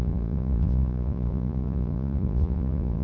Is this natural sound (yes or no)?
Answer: no